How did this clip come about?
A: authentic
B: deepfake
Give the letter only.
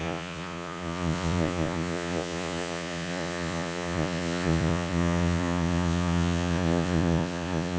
B